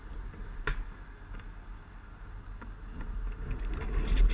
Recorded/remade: recorded